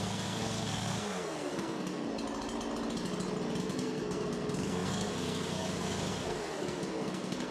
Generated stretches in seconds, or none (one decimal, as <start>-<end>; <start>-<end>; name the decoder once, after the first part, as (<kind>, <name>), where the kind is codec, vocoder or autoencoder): 0.0-2.1 (codec, SNAC); 3.6-7.5